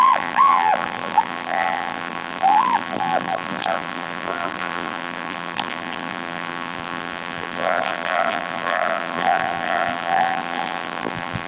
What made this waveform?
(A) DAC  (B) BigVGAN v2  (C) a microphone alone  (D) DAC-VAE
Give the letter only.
B